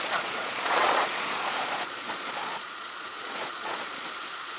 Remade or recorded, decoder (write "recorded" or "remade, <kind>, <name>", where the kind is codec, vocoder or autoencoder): remade, vocoder, Vocos